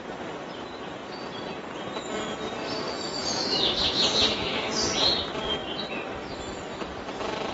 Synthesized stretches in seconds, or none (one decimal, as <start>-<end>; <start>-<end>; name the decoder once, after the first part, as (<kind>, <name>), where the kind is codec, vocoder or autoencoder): 3.2-4.7 (autoencoder, DAC-VAE)